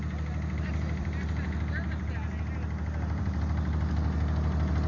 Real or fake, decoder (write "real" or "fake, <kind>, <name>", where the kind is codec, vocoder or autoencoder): real